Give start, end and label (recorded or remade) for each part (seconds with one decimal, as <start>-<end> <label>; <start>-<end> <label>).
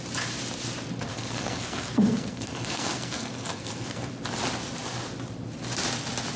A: 0.0-1.1 recorded; 1.1-4.1 remade; 4.1-6.4 recorded